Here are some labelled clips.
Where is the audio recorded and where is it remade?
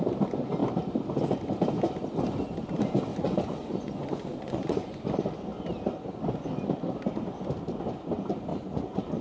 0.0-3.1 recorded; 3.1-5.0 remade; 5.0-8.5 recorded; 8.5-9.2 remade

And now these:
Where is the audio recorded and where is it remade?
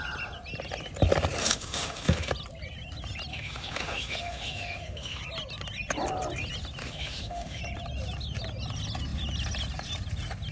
0.0-1.4 recorded; 1.4-2.3 remade; 2.3-3.3 recorded; 3.3-5.2 remade; 5.2-6.8 recorded; 6.8-7.6 remade; 7.6-10.5 recorded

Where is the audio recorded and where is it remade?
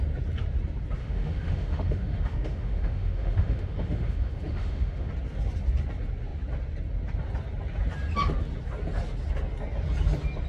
0.0-1.0 recorded; 1.0-5.1 remade; 5.1-10.5 recorded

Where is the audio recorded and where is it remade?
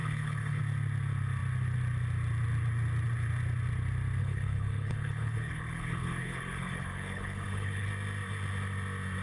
0.0-0.6 remade; 0.6-4.2 recorded; 4.2-7.9 remade; 7.9-9.2 recorded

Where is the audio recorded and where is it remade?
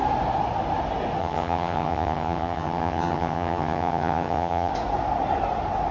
0.0-1.2 recorded; 1.2-4.7 remade; 4.7-5.9 recorded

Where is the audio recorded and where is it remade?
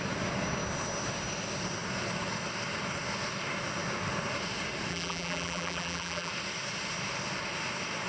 0.0-4.9 recorded; 4.9-6.3 remade; 6.3-8.1 recorded